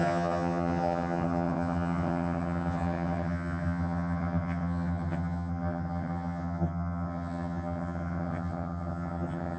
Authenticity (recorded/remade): remade